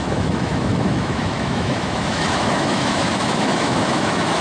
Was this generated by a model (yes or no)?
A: yes